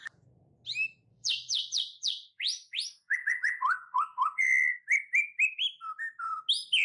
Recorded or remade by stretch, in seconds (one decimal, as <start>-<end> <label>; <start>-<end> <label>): 0.0-1.1 recorded; 1.1-4.5 remade; 4.5-6.8 recorded